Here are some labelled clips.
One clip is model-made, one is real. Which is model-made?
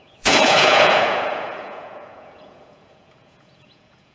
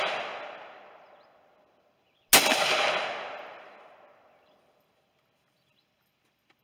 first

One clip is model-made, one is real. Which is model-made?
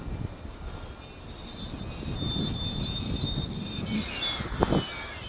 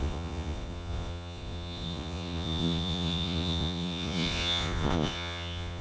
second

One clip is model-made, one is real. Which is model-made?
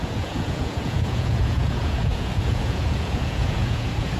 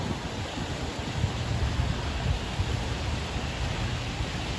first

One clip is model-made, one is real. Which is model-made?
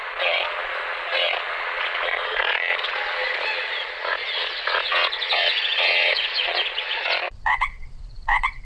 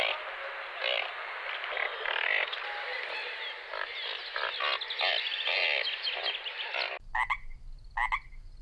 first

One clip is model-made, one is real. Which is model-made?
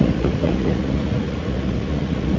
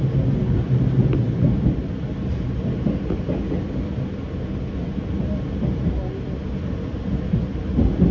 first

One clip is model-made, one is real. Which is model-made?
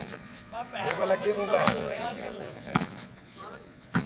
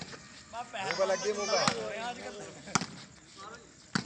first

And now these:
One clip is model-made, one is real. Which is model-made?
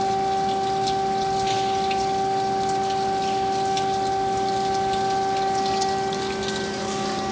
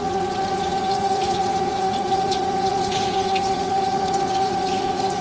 second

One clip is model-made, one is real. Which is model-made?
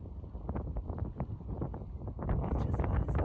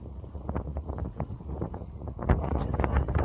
second